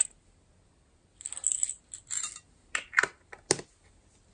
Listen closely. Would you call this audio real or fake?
real